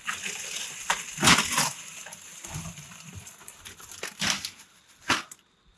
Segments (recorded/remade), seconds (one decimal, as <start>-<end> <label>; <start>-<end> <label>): 0.0-2.3 recorded; 2.3-3.9 remade; 3.9-5.8 recorded